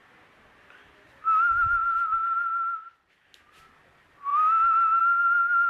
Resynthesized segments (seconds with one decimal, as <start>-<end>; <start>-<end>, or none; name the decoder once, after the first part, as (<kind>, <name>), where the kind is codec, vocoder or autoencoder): none